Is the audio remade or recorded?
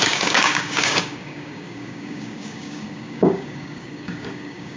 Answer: remade